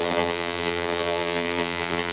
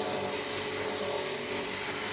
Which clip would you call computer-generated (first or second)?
first